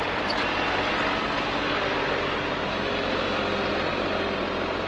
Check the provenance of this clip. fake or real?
real